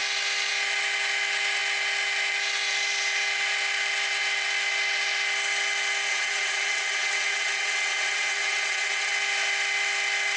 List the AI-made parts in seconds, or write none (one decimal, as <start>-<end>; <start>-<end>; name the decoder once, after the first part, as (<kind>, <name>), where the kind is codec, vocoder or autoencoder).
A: 6.1-9.1 (vocoder, WaveNeXt)